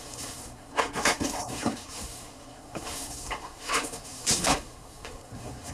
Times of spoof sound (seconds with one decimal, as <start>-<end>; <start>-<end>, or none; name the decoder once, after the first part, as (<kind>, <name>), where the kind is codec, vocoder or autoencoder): 0.0-5.7 (codec, SNAC)